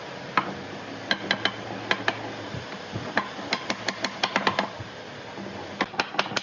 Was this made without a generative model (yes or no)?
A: yes